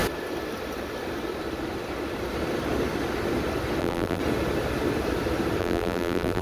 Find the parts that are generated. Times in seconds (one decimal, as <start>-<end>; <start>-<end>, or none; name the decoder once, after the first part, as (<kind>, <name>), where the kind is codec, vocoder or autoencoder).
3.8-4.2 (vocoder, BigVGAN v2); 5.6-6.4